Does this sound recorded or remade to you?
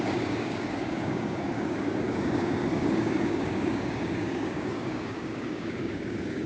remade